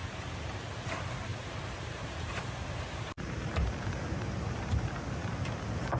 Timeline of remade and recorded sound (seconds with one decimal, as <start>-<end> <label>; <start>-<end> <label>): 0.0-0.6 remade; 0.6-1.3 recorded; 1.3-4.9 remade; 4.9-6.0 recorded